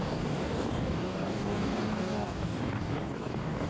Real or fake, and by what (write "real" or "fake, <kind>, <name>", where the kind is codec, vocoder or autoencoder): fake, codec, DAC